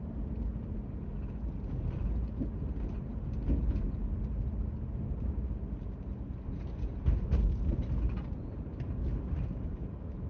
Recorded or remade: recorded